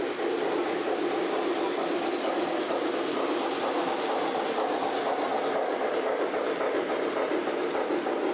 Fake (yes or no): no